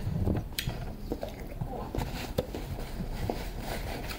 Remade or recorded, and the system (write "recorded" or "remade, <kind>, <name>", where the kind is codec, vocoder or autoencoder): remade, vocoder, BigVGAN v2